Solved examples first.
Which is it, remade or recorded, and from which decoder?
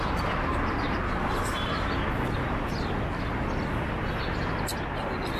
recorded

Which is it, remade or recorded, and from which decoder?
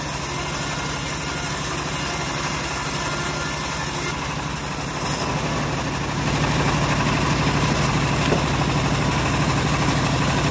recorded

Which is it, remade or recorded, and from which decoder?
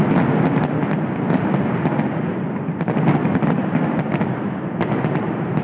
recorded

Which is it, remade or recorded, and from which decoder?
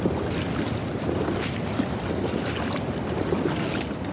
recorded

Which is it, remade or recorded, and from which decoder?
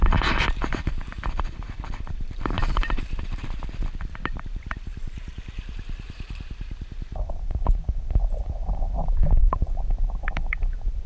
remade, vocoder, BigVGAN v2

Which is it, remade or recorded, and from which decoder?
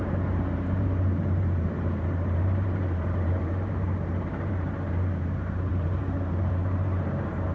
remade, vocoder, BigVGAN v2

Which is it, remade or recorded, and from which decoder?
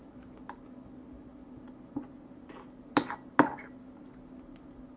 recorded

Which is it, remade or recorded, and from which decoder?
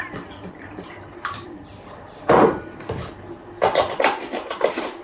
remade, vocoder, BigVGAN v2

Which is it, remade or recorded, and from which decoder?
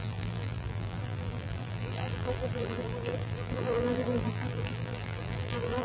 remade, vocoder, BigVGAN v2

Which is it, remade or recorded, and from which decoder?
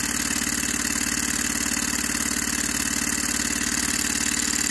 recorded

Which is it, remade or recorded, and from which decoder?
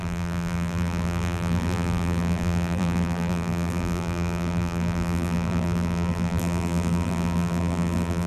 remade, vocoder, BigVGAN v2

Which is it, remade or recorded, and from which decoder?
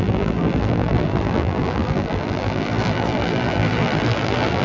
remade, vocoder, BigVGAN v2